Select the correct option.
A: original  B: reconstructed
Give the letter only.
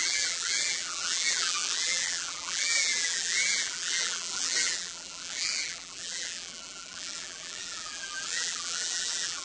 B